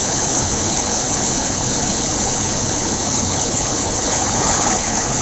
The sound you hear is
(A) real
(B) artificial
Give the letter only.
B